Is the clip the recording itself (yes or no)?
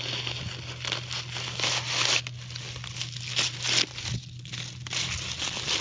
yes